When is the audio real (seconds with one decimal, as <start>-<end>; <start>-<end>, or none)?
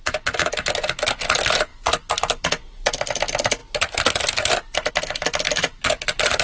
0.0-6.4